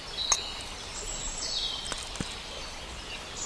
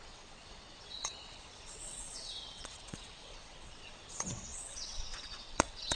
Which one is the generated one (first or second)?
second